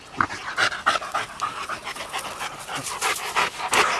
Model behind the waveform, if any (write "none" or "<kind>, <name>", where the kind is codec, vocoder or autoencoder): none